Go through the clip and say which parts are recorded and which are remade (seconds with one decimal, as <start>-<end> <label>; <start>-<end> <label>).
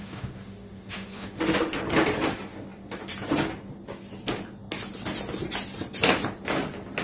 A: 0.0-1.8 remade; 1.8-7.0 recorded